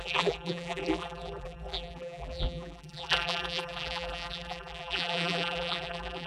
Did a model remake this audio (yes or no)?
yes